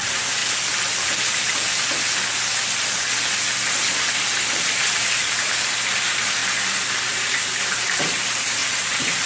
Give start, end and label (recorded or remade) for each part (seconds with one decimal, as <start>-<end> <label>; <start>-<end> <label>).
0.0-0.4 remade; 0.4-4.4 recorded; 4.4-6.4 remade; 6.4-7.1 recorded; 7.1-9.3 remade

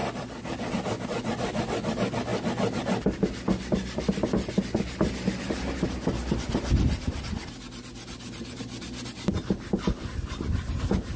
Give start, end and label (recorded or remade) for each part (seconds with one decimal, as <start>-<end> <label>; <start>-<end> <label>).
0.0-11.2 recorded

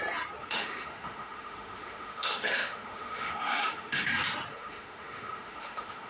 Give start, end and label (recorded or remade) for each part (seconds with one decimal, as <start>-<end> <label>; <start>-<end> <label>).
0.0-0.4 recorded; 0.4-4.1 remade; 4.1-4.5 recorded; 4.5-6.1 remade

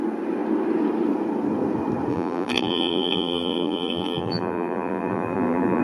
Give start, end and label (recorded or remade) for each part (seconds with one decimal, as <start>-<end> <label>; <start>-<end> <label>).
0.0-2.1 recorded; 2.1-5.8 remade

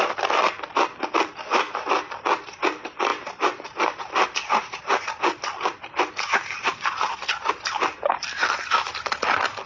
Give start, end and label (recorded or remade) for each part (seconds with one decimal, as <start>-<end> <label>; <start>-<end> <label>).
0.0-9.7 recorded

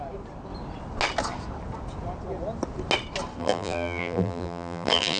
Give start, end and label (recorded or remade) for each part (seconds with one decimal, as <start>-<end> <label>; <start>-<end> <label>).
0.0-3.4 recorded; 3.4-5.2 remade

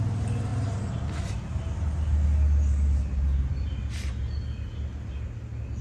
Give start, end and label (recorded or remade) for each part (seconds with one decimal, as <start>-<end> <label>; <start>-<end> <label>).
0.0-5.8 recorded

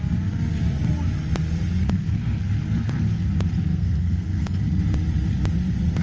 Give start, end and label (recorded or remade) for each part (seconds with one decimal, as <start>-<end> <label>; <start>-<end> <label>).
0.0-1.8 recorded; 1.8-2.4 remade; 2.4-3.7 recorded; 3.7-4.6 remade; 4.6-6.0 recorded